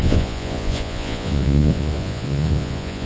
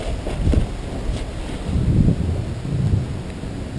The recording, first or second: second